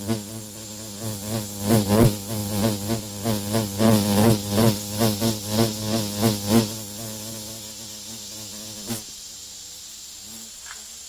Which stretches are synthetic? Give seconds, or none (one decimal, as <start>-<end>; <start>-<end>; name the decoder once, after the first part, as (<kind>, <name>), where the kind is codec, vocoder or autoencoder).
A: none